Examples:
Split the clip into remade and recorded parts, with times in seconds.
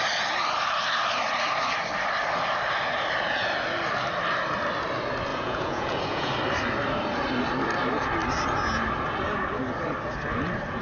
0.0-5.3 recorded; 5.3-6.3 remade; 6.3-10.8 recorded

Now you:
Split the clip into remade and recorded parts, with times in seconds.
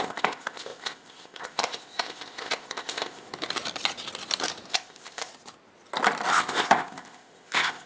0.0-3.3 remade; 3.3-4.7 recorded; 4.7-5.3 remade; 5.3-6.3 recorded; 6.3-7.9 remade